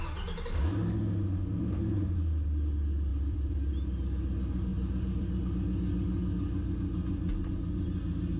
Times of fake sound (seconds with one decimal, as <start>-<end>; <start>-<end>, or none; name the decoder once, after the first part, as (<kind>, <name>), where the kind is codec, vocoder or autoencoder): 3.1-3.7 (vocoder, BigVGAN v2); 4.7-5.4